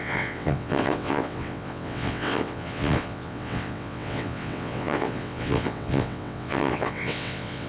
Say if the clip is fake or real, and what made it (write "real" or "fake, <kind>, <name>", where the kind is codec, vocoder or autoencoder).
fake, vocoder, WaveNeXt